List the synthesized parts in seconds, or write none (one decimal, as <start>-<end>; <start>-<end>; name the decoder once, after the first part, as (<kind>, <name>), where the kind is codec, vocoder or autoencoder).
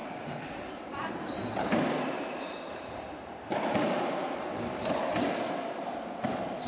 0.0-5.0 (vocoder, BigVGAN v2); 5.8-6.7